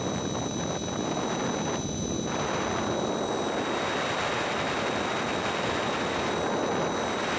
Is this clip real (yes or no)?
yes